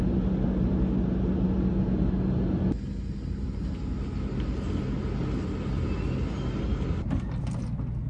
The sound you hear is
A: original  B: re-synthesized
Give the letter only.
A